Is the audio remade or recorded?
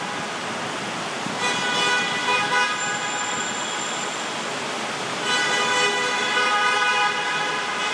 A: recorded